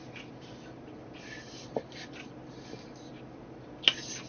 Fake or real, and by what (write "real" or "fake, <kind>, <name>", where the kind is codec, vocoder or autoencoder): real